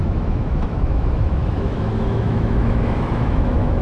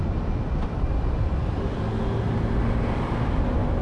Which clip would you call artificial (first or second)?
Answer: first